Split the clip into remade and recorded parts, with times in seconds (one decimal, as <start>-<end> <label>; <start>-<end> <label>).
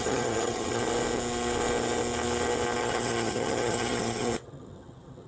0.0-0.8 remade; 0.8-2.8 recorded; 2.8-5.3 remade